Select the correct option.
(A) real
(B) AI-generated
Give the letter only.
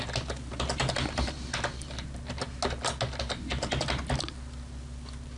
A